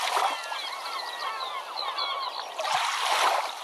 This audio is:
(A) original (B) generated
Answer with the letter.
A